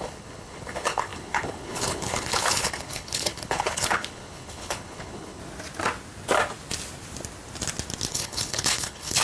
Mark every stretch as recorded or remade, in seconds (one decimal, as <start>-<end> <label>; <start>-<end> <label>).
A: 0.0-5.4 remade; 5.4-8.1 recorded; 8.1-9.2 remade